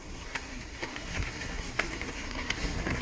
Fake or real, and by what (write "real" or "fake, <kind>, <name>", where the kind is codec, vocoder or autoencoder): fake, codec, SNAC